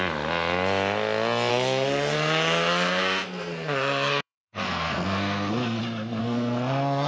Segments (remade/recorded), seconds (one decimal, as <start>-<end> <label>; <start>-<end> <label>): 0.0-1.5 recorded; 1.5-5.8 remade; 5.8-6.2 recorded; 6.2-7.1 remade